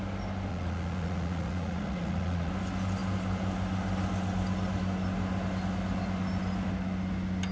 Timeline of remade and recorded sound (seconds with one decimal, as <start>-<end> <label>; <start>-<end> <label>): 0.0-0.5 recorded; 0.5-2.5 remade; 2.5-7.5 recorded